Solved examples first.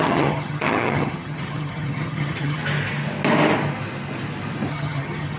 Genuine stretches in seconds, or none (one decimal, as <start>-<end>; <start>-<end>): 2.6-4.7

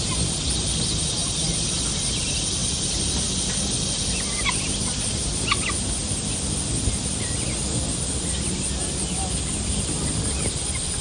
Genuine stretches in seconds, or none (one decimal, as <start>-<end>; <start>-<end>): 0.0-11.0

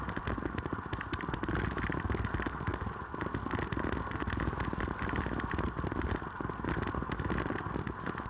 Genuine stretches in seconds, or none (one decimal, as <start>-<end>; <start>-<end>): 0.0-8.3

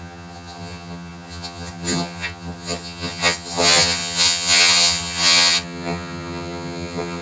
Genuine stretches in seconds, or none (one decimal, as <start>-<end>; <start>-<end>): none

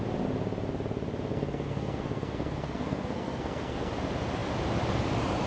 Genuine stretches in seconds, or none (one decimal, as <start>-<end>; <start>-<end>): 0.0-1.3; 3.9-5.5

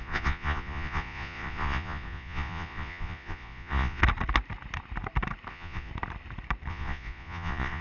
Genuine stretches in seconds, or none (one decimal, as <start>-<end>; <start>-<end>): 4.0-5.5; 5.9-6.7

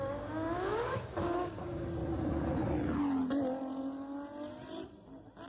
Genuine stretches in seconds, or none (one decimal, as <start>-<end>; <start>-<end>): 2.0-5.5

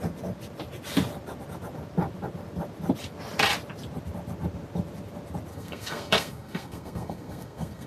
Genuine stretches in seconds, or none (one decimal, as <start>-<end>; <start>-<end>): 0.0-5.5